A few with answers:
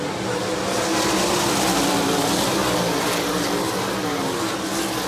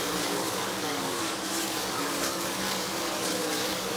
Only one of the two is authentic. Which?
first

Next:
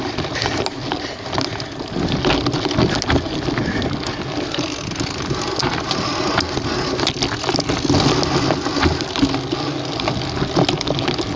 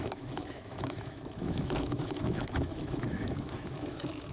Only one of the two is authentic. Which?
first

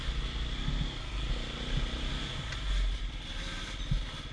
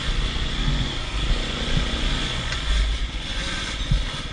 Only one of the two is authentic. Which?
first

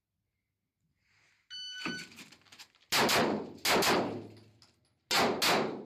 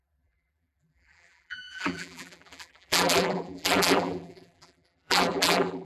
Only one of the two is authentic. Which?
first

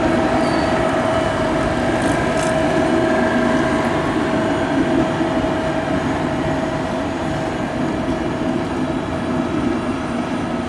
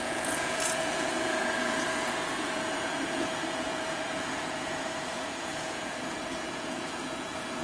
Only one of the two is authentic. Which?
first